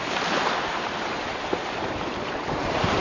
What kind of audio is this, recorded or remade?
remade